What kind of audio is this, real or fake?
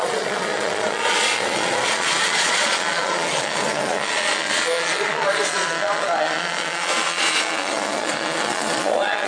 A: fake